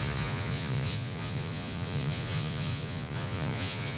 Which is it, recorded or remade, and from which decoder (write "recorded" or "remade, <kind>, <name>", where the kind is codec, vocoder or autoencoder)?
remade, vocoder, Vocos